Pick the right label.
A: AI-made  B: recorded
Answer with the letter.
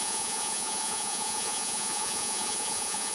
A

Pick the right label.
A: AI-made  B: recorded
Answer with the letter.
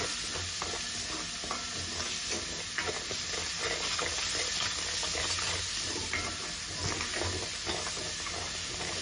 B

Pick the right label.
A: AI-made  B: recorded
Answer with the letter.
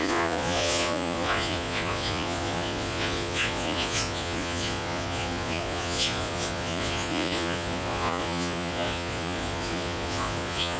A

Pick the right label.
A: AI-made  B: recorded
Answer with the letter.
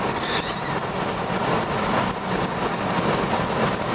B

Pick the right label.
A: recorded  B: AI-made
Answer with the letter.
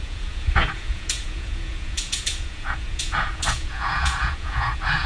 B